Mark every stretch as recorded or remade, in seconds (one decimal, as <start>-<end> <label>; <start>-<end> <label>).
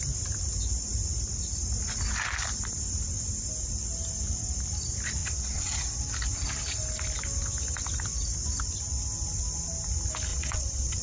0.0-5.2 recorded; 5.2-6.0 remade; 6.0-10.3 recorded; 10.3-11.0 remade